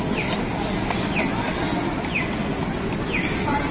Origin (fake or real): real